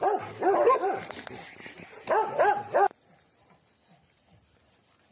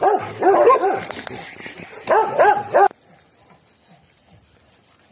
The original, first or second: first